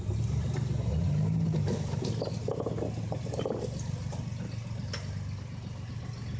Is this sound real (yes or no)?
yes